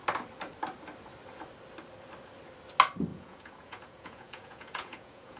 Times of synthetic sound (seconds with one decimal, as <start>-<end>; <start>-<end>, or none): 3.1-5.4